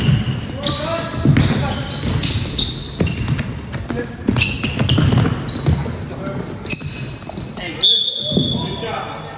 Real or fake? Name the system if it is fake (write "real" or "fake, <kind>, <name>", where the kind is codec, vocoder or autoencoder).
real